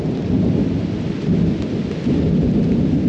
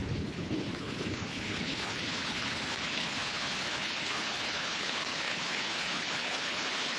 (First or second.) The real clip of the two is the first